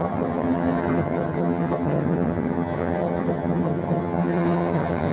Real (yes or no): no